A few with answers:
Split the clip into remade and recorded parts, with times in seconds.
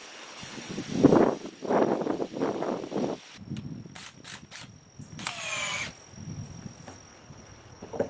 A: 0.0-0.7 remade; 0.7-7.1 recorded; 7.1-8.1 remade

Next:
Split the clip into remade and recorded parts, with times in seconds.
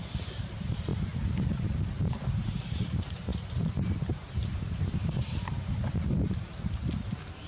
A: 0.0-0.9 remade; 0.9-2.1 recorded; 2.1-7.5 remade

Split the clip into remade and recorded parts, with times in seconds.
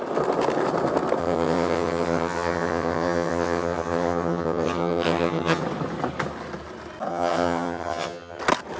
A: 0.0-1.2 recorded; 1.2-5.6 remade; 5.6-7.1 recorded; 7.1-8.4 remade; 8.4-8.8 recorded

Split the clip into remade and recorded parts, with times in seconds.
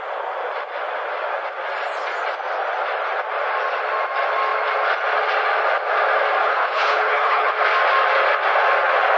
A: 0.0-6.4 recorded; 6.4-7.5 remade; 7.5-9.2 recorded